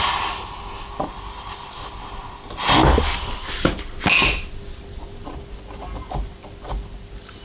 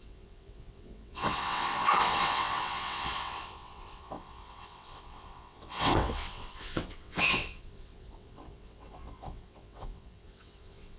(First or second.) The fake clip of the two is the second